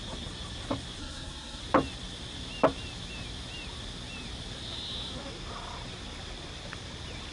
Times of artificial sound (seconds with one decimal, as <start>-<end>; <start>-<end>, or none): 1.0-1.6